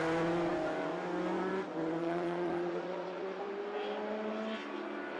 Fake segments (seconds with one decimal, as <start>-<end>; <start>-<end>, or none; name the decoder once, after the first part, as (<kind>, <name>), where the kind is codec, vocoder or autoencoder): 2.0-3.4 (vocoder, Vocos)